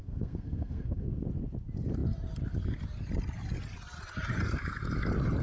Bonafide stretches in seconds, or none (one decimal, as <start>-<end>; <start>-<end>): 1.2-5.4